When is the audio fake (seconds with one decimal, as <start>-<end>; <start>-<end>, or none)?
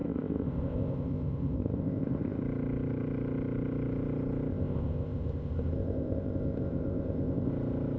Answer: 0.0-2.4; 4.5-7.5